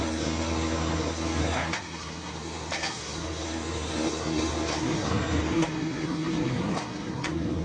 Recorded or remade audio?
remade